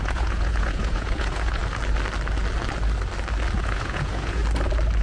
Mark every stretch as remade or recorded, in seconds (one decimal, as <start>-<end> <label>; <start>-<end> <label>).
0.0-1.6 remade; 1.6-3.6 recorded; 3.6-4.4 remade; 4.4-5.0 recorded